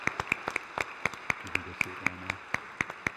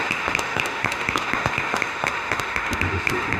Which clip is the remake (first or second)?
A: second